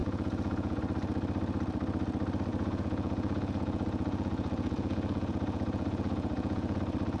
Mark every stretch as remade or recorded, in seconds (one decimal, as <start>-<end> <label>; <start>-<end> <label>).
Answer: 0.0-0.8 remade; 0.8-2.5 recorded; 2.5-6.8 remade; 6.8-7.2 recorded